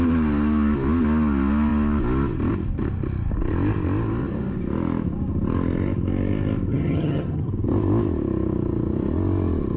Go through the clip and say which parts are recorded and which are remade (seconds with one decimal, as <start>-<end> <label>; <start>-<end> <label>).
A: 0.0-6.7 recorded; 6.7-7.5 remade; 7.5-9.8 recorded